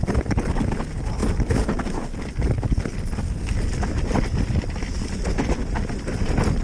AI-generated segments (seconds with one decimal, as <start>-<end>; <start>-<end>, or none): none